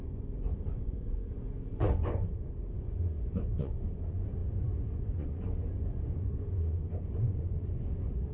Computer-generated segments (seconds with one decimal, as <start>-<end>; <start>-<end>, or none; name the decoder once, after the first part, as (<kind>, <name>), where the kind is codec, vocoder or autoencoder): 0.0-8.3 (vocoder, Vocos)